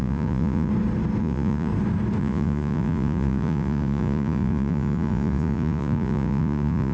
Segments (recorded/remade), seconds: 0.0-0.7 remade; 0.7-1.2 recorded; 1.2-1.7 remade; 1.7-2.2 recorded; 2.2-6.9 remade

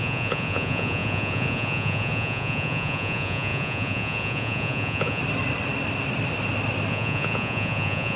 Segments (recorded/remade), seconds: 0.0-5.2 remade; 5.2-6.9 recorded; 6.9-8.2 remade

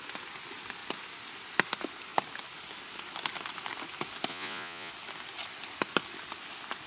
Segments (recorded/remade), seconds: 0.0-4.3 recorded; 4.3-4.9 remade; 4.9-6.9 recorded

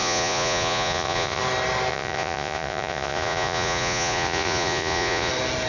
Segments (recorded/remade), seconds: 0.0-1.4 remade; 1.4-1.9 recorded; 1.9-5.3 remade; 5.3-5.7 recorded